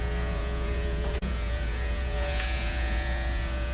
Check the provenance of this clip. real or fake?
fake